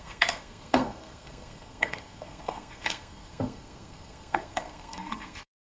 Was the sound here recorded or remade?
remade